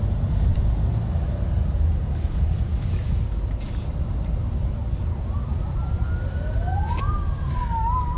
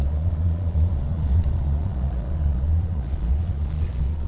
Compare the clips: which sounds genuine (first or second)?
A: first